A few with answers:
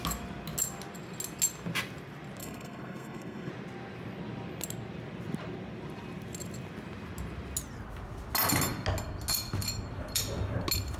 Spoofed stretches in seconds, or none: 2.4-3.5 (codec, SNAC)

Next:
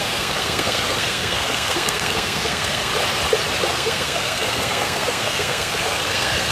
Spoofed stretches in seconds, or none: 0.0-2.9 (codec, SNAC); 3.7-6.5

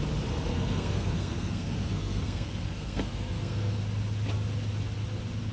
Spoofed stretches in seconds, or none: 0.5-3.8 (codec, SNAC)

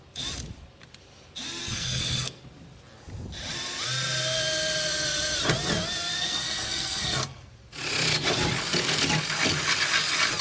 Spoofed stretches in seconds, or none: 1.6-2.4 (codec, SNAC); 6.1-7.5

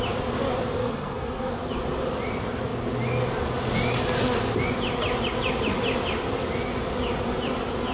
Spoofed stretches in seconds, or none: 0.8-1.5 (codec, SNAC)

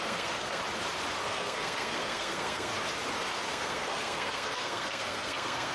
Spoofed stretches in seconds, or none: 0.0-0.6 (codec, SNAC); 1.2-2.7; 3.5-5.7